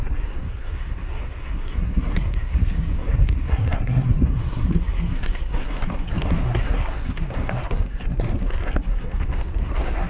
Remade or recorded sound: remade